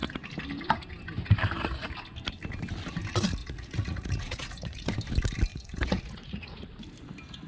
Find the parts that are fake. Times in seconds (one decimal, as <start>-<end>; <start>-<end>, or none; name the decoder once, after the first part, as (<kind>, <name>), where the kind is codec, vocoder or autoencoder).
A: 3.4-4.9 (vocoder, Vocos); 5.5-6.7